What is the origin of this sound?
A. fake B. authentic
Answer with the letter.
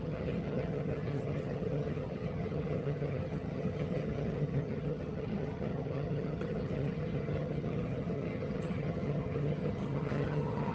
A